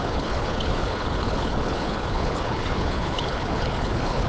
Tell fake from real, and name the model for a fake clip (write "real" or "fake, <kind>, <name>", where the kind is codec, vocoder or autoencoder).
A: fake, codec, HILCodec